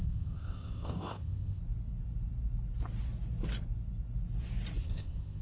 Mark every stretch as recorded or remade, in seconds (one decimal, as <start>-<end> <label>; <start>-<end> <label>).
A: 0.0-1.6 remade; 1.6-4.8 recorded; 4.8-5.4 remade